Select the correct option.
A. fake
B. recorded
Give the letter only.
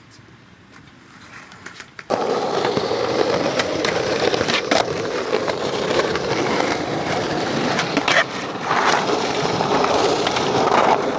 A